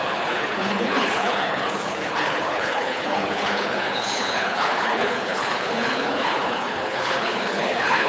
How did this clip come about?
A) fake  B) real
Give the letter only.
A